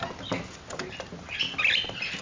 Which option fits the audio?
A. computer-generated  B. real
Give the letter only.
B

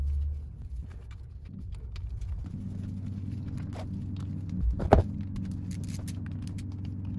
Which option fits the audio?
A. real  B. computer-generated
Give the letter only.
A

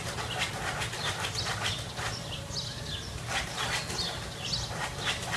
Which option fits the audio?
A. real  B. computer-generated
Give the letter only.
A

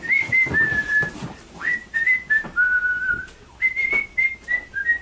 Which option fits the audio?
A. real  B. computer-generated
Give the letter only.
B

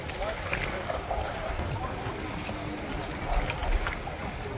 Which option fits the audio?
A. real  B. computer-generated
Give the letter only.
A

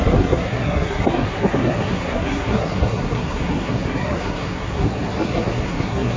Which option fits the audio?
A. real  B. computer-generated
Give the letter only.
B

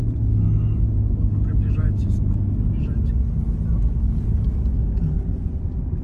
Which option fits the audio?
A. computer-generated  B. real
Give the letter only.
B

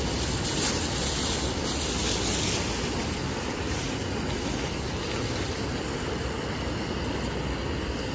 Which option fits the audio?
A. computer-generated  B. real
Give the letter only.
B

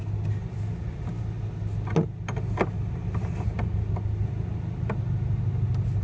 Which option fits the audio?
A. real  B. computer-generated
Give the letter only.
A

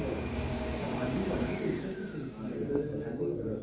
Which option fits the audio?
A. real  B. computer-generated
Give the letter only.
B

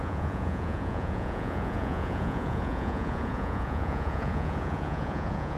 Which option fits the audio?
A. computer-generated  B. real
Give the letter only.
A